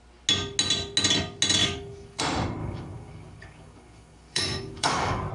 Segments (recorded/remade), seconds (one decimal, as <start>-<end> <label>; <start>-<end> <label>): 0.0-1.6 recorded; 1.6-2.2 remade; 2.2-2.6 recorded; 2.6-5.3 remade